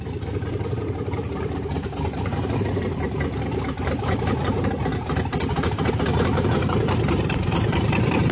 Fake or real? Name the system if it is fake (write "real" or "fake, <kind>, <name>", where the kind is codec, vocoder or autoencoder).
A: fake, vocoder, BigVGAN v2